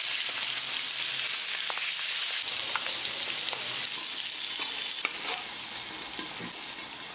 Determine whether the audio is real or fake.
real